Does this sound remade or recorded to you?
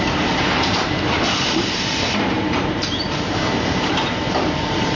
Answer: remade